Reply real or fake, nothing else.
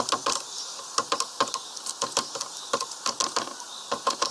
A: real